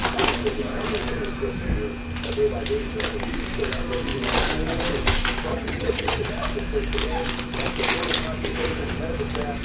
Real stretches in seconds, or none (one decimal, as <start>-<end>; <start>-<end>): 0.0-5.5; 6.3-9.6